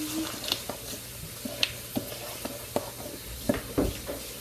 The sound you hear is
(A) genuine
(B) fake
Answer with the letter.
A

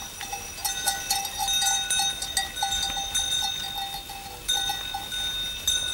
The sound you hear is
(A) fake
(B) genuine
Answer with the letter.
B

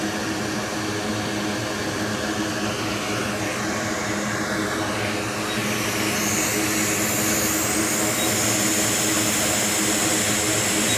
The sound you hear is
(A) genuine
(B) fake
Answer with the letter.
A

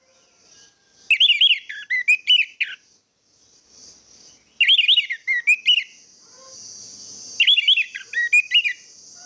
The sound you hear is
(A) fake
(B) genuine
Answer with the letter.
B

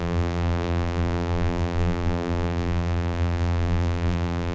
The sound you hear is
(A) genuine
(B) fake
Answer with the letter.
B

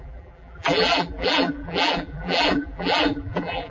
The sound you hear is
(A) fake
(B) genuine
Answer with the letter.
A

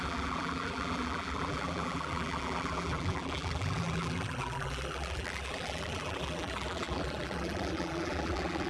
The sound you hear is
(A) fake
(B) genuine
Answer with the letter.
A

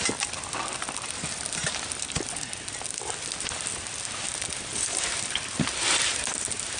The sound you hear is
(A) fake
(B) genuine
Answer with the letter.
A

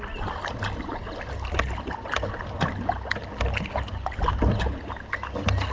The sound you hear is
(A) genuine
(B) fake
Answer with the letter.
A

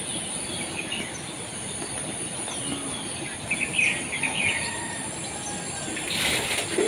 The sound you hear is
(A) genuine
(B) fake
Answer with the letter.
A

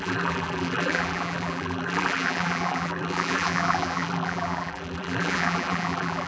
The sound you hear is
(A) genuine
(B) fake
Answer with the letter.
B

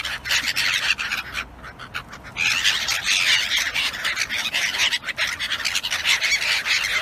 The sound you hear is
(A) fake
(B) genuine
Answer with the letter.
B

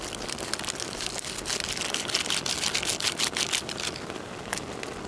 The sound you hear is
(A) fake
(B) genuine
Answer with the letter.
B